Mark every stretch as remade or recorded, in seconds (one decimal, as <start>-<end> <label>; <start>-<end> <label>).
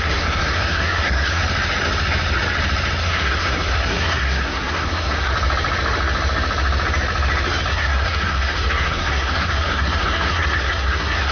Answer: 0.0-1.4 remade; 1.4-3.0 recorded; 3.0-5.3 remade; 5.3-7.7 recorded; 7.7-11.3 remade